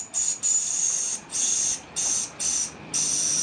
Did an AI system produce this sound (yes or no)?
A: no